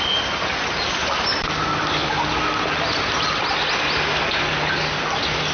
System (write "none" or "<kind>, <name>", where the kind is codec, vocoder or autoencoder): none